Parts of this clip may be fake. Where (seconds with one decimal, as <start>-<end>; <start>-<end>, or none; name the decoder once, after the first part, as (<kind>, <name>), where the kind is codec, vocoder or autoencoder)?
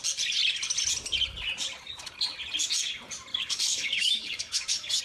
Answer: 3.3-5.0 (codec, DAC)